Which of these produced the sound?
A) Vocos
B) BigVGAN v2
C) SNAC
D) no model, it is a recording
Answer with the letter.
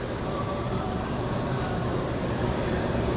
B